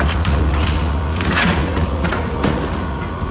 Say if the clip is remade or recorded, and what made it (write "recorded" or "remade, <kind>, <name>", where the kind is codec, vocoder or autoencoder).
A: remade, vocoder, Vocos